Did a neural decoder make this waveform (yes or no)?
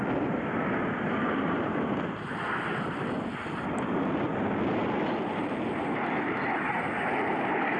no